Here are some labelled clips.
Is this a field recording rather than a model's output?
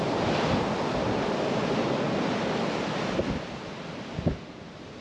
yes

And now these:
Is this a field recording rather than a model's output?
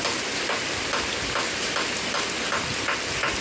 yes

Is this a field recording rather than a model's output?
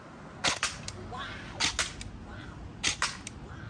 yes